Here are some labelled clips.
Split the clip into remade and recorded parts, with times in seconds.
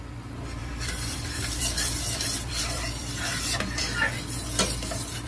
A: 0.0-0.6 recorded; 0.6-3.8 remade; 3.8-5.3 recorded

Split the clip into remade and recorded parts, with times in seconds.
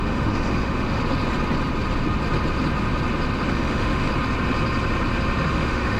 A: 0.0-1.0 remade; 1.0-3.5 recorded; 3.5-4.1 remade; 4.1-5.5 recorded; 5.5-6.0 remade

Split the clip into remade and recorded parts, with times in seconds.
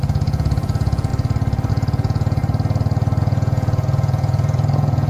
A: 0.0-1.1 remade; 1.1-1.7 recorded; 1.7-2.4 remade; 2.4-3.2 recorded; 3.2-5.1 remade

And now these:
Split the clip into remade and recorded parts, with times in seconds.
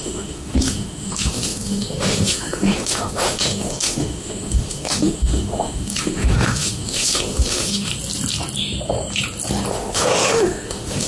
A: 0.0-7.9 remade; 7.9-9.7 recorded; 9.7-11.1 remade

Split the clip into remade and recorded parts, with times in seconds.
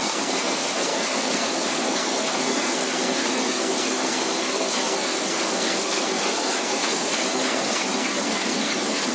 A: 0.0-9.1 remade